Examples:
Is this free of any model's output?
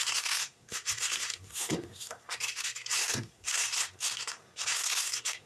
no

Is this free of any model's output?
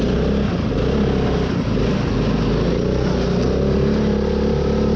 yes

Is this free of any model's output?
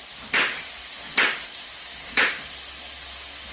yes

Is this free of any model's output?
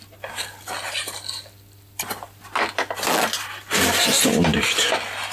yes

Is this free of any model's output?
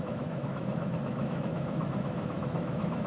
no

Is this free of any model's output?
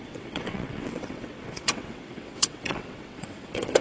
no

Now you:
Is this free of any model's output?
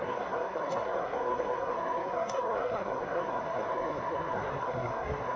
no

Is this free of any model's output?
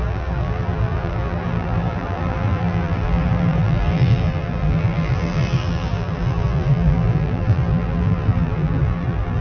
no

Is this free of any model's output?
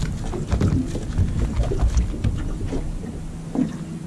yes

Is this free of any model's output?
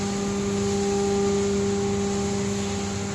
yes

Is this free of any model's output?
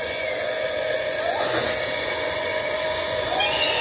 no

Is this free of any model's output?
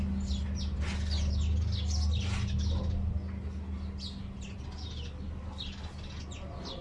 yes